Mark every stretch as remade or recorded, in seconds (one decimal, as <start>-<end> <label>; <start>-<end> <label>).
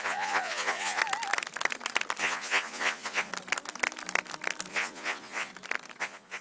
0.0-1.0 remade; 1.0-2.2 recorded; 2.2-3.3 remade; 3.3-4.7 recorded; 4.7-5.5 remade; 5.5-6.0 recorded; 6.0-6.4 remade